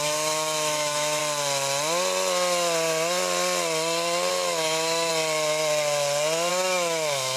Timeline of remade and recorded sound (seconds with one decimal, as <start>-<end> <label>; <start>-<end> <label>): 0.0-1.2 remade; 1.2-4.3 recorded; 4.3-5.1 remade; 5.1-6.5 recorded; 6.5-7.4 remade